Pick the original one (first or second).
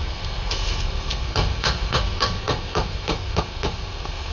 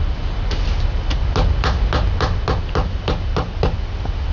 second